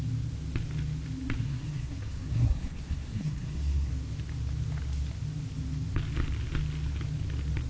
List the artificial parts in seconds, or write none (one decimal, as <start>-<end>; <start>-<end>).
1.4-3.9